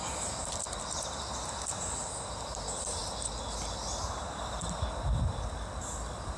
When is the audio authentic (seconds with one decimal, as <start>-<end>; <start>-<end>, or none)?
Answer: 0.0-6.4